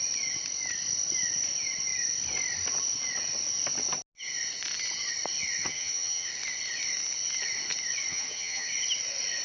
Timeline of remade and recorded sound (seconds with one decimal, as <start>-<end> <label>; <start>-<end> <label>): 0.0-5.6 recorded; 5.6-6.3 remade; 6.3-8.1 recorded; 8.1-8.7 remade; 8.7-9.4 recorded

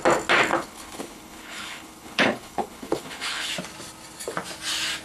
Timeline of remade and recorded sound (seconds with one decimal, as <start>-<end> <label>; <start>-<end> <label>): 0.0-0.5 recorded; 0.5-3.5 remade; 3.5-5.0 recorded

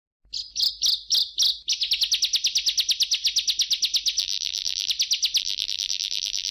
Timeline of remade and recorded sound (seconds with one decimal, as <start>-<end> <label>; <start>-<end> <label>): 0.0-4.2 recorded; 4.2-4.9 remade; 4.9-5.4 recorded; 5.4-6.5 remade

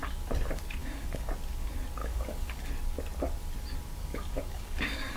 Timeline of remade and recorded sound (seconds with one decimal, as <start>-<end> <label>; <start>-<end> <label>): 0.0-0.8 recorded; 0.8-1.3 remade; 1.3-2.0 recorded; 2.0-2.7 remade; 2.7-4.0 recorded; 4.0-5.2 remade

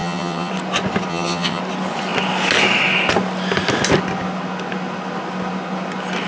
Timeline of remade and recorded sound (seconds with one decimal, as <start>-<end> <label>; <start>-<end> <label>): 0.0-0.5 remade; 0.5-1.1 recorded; 1.1-1.6 remade; 1.6-6.3 recorded

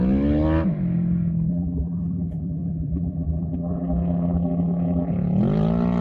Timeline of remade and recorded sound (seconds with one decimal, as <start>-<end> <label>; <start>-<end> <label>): 0.0-1.5 recorded; 1.5-5.1 remade; 5.1-6.0 recorded